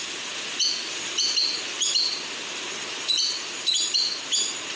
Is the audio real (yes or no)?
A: yes